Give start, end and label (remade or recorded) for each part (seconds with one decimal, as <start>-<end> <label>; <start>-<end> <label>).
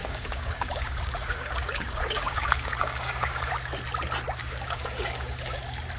0.0-3.5 remade; 3.5-4.4 recorded; 4.4-5.6 remade; 5.6-6.0 recorded